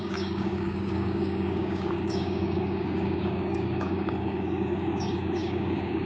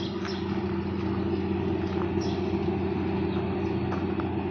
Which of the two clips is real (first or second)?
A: second